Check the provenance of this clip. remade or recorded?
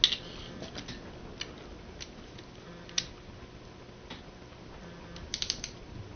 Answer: recorded